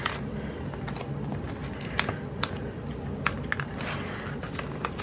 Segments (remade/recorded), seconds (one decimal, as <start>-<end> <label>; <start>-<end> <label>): 0.0-5.0 recorded